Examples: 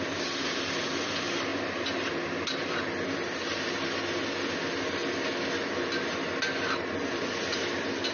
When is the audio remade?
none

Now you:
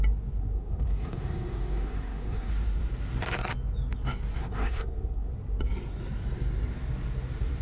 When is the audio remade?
0.4-2.5 (codec, SNAC); 4.4-5.3

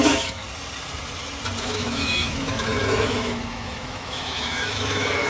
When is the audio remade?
0.0-0.4 (autoencoder, DAC-VAE); 1.6-5.3